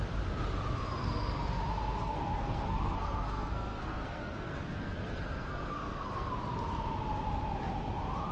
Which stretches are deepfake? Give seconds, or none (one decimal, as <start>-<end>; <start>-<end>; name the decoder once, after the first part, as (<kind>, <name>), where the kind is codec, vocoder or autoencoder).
1.0-1.6 (codec, SNAC); 2.0-6.3